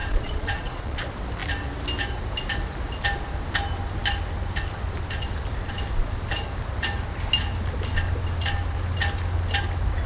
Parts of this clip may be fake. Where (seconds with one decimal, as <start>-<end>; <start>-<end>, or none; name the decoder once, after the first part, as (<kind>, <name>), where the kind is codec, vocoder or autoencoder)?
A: 0.0-1.0 (vocoder, Vocos)